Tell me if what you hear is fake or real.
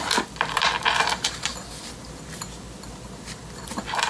fake